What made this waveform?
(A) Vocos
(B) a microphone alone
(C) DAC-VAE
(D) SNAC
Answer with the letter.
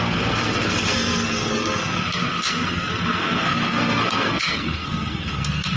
D